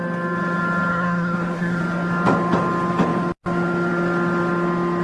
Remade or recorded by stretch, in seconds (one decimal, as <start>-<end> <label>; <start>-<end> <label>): 0.0-0.9 recorded; 0.9-1.8 remade; 1.8-5.0 recorded

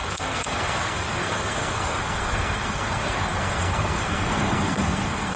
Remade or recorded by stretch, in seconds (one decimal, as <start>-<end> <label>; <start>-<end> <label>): 0.0-5.4 remade

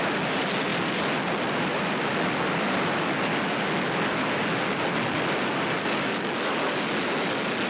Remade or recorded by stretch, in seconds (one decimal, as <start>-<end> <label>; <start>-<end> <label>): 0.0-7.7 recorded

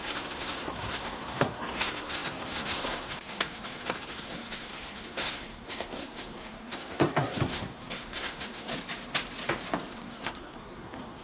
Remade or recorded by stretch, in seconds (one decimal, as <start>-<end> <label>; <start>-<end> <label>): 0.0-8.7 remade; 8.7-9.9 recorded; 9.9-11.2 remade

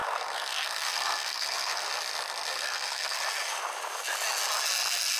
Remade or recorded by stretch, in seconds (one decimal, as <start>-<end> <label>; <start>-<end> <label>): 0.0-1.9 remade; 1.9-2.5 recorded; 2.5-3.2 remade; 3.2-5.2 recorded

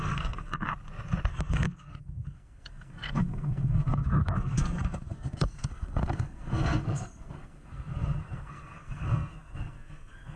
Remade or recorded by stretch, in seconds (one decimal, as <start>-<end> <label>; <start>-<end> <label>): 0.0-0.7 remade; 0.7-1.3 recorded; 1.3-10.4 remade